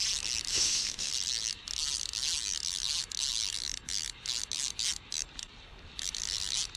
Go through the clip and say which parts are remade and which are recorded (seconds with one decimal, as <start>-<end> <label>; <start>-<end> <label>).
0.0-0.5 recorded; 0.5-1.1 remade; 1.1-6.8 recorded

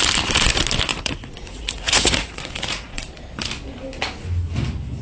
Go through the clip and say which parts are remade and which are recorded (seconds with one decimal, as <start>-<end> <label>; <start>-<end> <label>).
0.0-0.9 recorded; 0.9-3.1 remade; 3.1-5.0 recorded